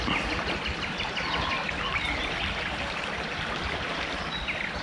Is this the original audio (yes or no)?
yes